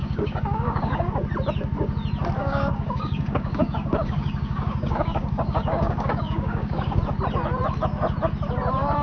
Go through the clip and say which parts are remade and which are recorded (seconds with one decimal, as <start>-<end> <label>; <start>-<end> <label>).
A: 0.0-1.1 remade; 1.1-2.4 recorded; 2.4-7.0 remade; 7.0-9.0 recorded